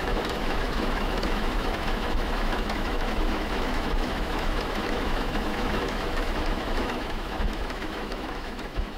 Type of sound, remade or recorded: remade